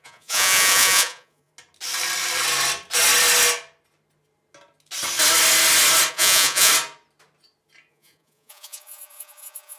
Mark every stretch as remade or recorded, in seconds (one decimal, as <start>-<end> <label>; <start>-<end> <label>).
0.0-1.5 remade; 1.5-6.1 recorded; 6.1-6.7 remade; 6.7-7.9 recorded; 7.9-9.8 remade